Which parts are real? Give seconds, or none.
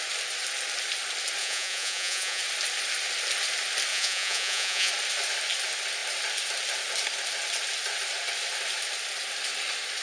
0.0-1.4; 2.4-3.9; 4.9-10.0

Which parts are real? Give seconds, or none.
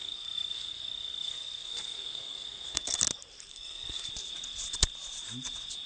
3.0-3.5; 4.1-5.9